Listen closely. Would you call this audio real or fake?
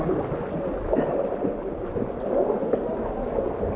real